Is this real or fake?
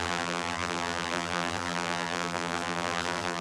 fake